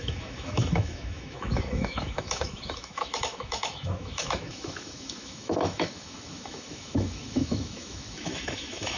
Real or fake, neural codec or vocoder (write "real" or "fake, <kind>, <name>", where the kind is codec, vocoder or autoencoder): fake, autoencoder, DAC-VAE